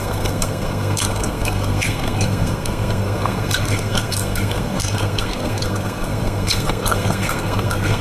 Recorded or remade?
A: remade